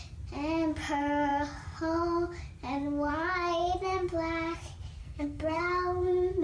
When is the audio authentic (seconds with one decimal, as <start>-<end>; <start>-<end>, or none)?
0.0-5.0; 5.6-6.4